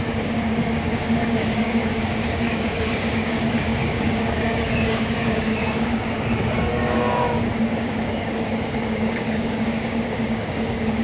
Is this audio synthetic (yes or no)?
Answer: yes